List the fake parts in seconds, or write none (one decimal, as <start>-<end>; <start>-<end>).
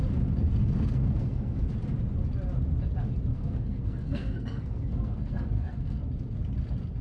0.6-1.6; 3.3-6.0